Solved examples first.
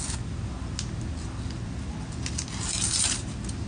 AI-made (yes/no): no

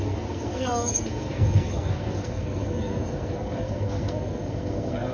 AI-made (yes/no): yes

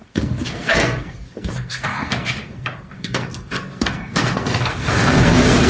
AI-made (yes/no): yes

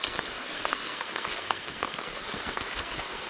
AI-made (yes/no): yes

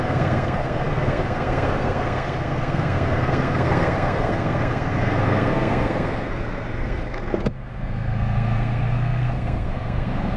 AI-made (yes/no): yes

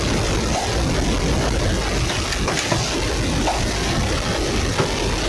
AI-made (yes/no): no